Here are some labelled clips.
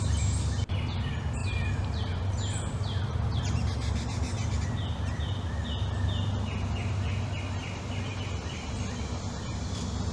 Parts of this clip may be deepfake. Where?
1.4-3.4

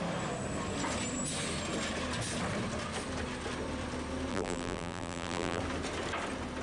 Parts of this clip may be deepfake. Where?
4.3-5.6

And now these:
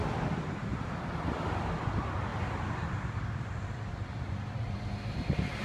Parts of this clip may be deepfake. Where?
0.7-1.7; 2.3-5.6

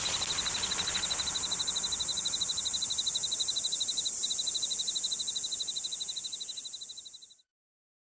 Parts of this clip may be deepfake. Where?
2.1-4.3